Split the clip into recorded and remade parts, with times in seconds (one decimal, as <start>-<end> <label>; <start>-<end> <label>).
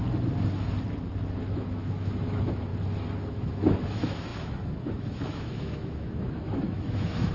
0.0-1.4 recorded; 1.4-2.7 remade; 2.7-3.3 recorded; 3.3-7.3 remade